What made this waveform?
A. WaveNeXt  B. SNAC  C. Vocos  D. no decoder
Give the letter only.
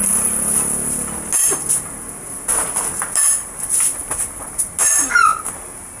D